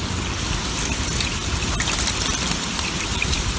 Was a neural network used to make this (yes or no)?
no